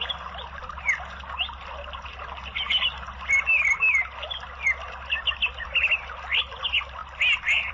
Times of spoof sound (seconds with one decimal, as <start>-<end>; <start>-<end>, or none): none